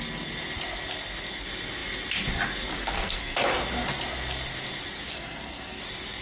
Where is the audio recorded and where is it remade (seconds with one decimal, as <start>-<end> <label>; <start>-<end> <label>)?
0.0-2.7 recorded; 2.7-3.4 remade; 3.4-5.1 recorded; 5.1-5.8 remade; 5.8-6.2 recorded

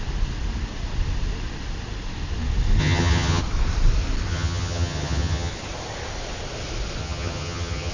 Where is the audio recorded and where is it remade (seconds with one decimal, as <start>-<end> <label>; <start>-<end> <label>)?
0.0-2.8 recorded; 2.8-3.4 remade; 3.4-4.3 recorded; 4.3-5.5 remade; 5.5-7.0 recorded; 7.0-7.9 remade

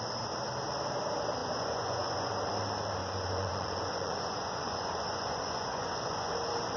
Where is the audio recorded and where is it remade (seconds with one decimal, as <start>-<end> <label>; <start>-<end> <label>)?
0.0-1.4 recorded; 1.4-2.3 remade; 2.3-3.0 recorded; 3.0-6.3 remade; 6.3-6.8 recorded

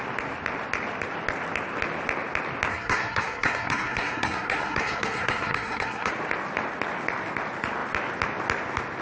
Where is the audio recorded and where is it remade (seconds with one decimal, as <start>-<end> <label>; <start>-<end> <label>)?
0.0-2.7 recorded; 2.7-6.1 remade; 6.1-9.0 recorded

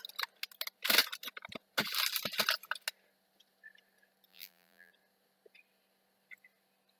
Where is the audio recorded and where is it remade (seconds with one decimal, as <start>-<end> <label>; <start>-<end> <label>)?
0.0-4.3 recorded; 4.3-4.9 remade; 4.9-7.0 recorded

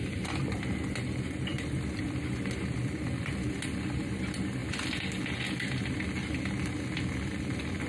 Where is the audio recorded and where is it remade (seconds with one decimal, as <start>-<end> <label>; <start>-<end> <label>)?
0.0-0.6 remade; 0.6-1.5 recorded; 1.5-3.3 remade; 3.3-7.9 recorded

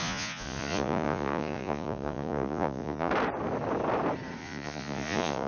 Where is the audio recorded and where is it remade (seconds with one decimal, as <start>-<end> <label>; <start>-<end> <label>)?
0.0-3.1 remade; 3.1-4.4 recorded; 4.4-5.5 remade

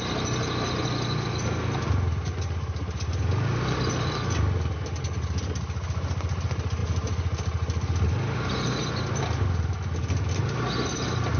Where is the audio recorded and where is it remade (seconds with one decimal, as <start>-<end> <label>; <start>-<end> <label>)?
0.0-11.4 recorded